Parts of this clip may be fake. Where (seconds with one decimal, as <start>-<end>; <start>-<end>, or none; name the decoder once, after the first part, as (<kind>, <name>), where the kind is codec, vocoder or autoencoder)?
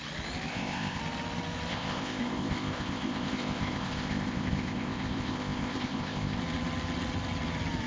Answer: 0.5-1.0 (codec, ZipCodec); 1.7-6.4